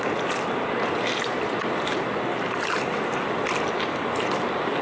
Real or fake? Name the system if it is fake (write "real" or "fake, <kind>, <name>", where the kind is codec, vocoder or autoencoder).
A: real